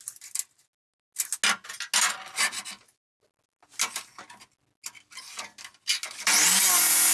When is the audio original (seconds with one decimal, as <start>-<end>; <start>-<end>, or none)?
0.0-7.1